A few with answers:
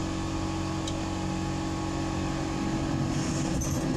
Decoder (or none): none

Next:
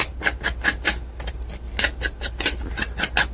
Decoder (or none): none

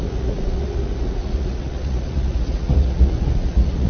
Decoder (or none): vocoder, Vocos